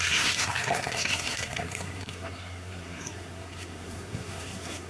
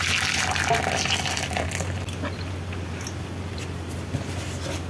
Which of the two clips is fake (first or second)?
first